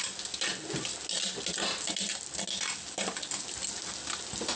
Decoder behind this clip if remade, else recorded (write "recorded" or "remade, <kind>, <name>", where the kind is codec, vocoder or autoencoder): recorded